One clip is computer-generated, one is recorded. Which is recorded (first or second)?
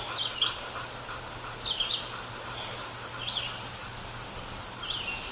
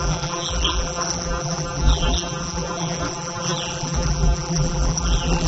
first